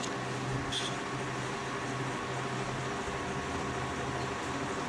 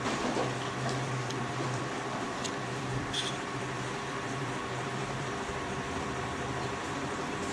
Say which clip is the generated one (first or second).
second